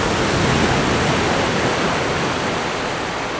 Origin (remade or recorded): recorded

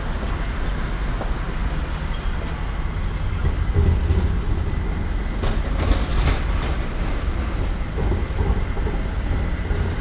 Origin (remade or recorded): recorded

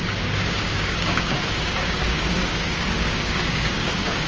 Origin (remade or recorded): remade